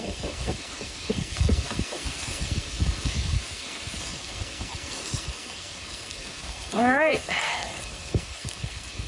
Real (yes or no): no